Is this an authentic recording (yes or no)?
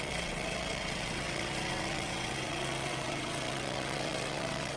no